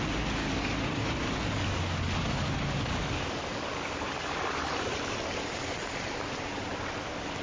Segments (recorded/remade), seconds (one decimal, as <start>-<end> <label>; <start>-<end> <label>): 0.0-0.4 recorded; 0.4-4.1 remade; 4.1-7.4 recorded